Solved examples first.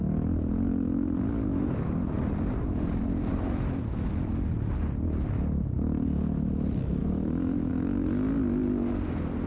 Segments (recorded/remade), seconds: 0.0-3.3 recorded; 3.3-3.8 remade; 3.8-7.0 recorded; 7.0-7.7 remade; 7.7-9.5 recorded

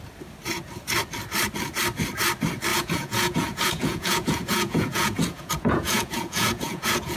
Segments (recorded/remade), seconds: 0.0-2.7 recorded; 2.7-7.2 remade